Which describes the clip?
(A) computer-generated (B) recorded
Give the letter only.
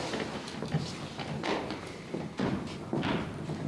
B